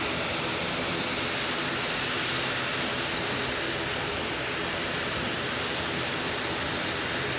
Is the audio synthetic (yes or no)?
no